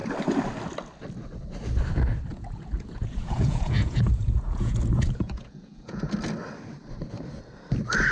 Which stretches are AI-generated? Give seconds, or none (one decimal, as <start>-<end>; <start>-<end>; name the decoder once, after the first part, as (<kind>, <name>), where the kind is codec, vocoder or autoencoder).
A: 2.3-6.1 (vocoder, Vocos)